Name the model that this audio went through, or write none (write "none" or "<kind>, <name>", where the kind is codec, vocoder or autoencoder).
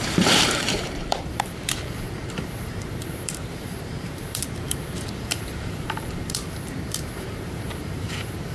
vocoder, BigVGAN v2